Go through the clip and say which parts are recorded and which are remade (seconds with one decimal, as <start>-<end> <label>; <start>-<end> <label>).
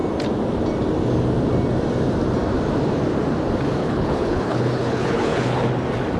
0.0-3.8 recorded; 3.8-5.7 remade; 5.7-6.2 recorded